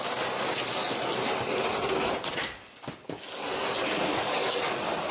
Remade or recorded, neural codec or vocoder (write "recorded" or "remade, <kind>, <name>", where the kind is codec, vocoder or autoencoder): recorded